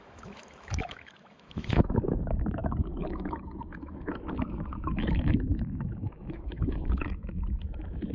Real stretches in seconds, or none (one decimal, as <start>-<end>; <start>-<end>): none